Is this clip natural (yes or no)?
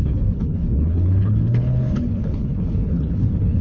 no